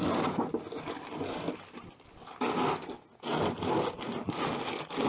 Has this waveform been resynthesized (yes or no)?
no